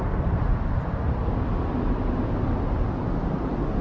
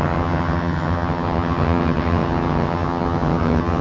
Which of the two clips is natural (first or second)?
first